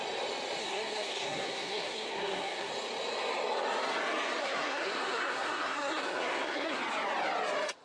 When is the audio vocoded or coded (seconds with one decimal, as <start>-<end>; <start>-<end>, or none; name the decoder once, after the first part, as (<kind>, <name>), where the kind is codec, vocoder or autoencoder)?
0.6-2.7 (codec, SNAC); 4.4-6.8